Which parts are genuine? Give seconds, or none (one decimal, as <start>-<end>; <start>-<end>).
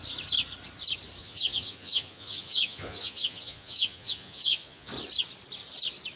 0.0-1.2; 4.9-6.2